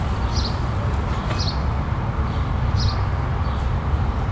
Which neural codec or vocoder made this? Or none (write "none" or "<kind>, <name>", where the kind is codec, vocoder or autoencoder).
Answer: none